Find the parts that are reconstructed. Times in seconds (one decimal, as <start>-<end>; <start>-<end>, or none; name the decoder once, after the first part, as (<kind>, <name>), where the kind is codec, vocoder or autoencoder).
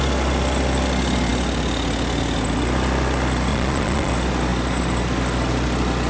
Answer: 3.5-4.1 (vocoder, Vocos)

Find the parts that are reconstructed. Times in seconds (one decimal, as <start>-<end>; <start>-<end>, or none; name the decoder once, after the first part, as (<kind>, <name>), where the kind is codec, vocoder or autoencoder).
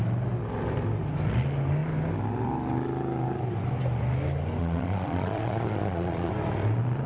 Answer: 4.6-6.3 (vocoder, Vocos)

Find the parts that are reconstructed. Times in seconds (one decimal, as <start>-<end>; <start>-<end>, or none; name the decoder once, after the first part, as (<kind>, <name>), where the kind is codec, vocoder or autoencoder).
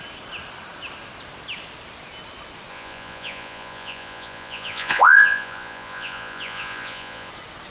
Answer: 2.7-7.3 (vocoder, Vocos)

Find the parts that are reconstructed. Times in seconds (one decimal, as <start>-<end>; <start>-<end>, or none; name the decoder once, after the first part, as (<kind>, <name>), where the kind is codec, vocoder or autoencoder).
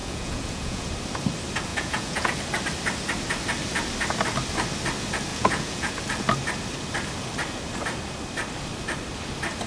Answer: 0.0-0.9 (vocoder, Vocos); 1.7-2.4; 5.3-5.9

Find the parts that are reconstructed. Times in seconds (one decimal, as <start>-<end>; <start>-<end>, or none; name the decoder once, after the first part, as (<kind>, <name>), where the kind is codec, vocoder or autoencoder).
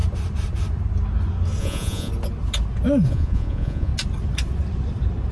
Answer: 1.6-2.1 (vocoder, Vocos); 3.1-3.9